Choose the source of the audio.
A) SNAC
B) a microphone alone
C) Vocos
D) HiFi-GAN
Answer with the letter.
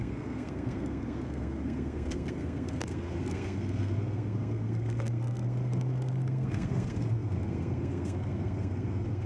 A